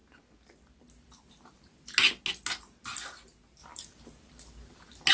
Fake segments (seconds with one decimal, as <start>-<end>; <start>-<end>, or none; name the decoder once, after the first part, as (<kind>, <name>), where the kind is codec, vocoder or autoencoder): none